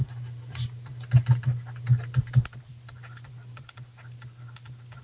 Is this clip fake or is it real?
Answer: real